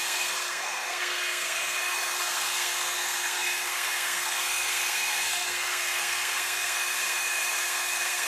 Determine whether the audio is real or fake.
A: fake